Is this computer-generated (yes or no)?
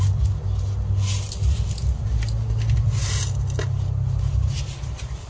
no